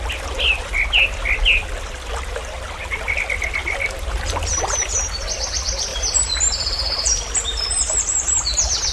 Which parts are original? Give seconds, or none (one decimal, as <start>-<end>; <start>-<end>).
0.0-3.6; 5.1-5.9; 7.2-8.9